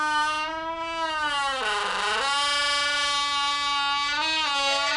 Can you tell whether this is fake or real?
real